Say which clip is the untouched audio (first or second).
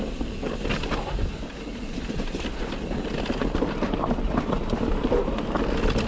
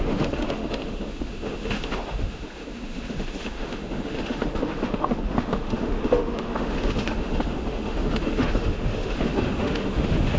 first